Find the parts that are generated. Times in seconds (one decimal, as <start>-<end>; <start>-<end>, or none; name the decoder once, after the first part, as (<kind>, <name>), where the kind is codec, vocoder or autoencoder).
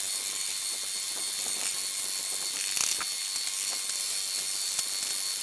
none